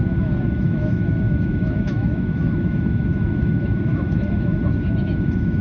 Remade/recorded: remade